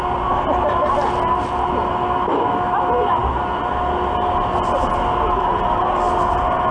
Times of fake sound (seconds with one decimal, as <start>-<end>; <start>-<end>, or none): none